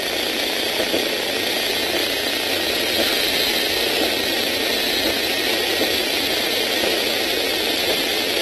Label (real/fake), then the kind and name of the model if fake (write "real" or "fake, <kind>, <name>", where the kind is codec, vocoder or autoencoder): real